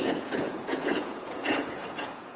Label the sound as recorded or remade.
remade